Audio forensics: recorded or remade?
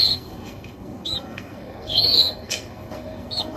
remade